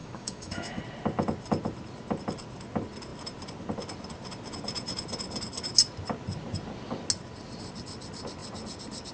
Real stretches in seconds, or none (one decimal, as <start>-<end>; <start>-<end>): 0.8-9.1